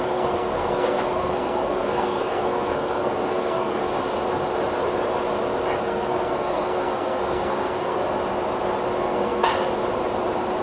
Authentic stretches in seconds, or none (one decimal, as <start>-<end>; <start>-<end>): 3.8-5.8; 8.0-9.0; 9.5-10.6

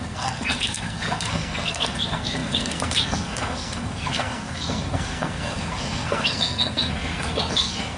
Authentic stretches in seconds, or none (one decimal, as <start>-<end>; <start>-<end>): none